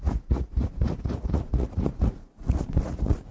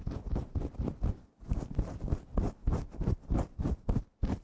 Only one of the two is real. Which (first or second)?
second